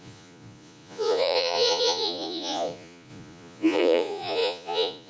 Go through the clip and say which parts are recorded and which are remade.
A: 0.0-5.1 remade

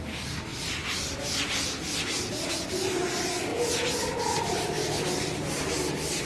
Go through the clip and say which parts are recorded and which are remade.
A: 0.0-0.5 remade; 0.5-2.3 recorded; 2.3-3.5 remade; 3.5-4.2 recorded; 4.2-4.8 remade; 4.8-5.3 recorded; 5.3-6.3 remade

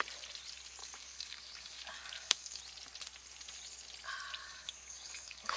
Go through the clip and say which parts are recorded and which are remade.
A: 0.0-0.8 recorded; 0.8-2.6 remade; 2.6-4.4 recorded; 4.4-5.6 remade

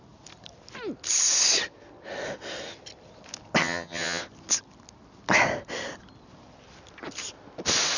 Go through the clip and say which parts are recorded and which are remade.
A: 0.0-3.6 recorded; 3.6-4.2 remade; 4.2-8.0 recorded

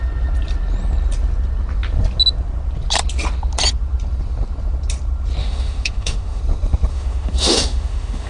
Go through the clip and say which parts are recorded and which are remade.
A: 0.0-5.4 recorded; 5.4-6.4 remade; 6.4-6.9 recorded; 6.9-8.3 remade